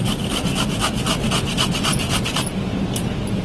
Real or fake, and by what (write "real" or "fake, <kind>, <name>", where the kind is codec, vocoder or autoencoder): real